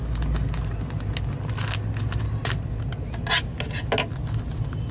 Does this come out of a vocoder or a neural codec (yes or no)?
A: no